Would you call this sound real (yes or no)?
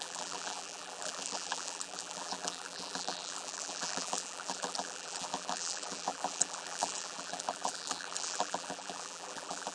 no